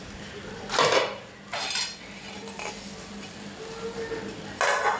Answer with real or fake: real